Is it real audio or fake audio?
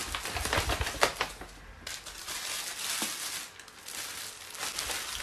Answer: real